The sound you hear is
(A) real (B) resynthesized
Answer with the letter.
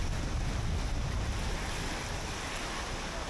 A